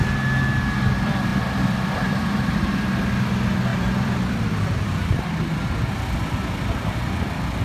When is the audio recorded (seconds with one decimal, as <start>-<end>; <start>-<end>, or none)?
0.0-1.3; 2.7-3.7; 5.2-7.6